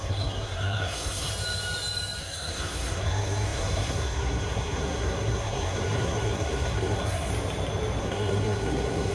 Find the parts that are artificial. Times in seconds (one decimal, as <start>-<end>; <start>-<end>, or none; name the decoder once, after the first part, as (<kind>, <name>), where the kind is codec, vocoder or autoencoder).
0.0-1.3 (codec, SNAC); 2.2-7.3; 8.0-9.1